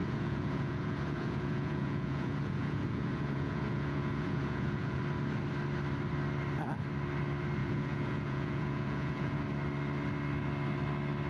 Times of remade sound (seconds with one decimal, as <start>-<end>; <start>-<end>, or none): 0.0-5.0; 7.6-9.4